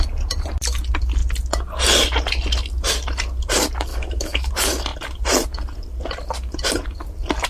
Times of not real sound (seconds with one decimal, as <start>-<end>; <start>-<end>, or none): 3.9-4.5